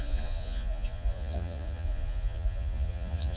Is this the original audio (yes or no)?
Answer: no